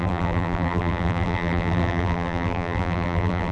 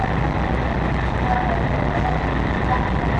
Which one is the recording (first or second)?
second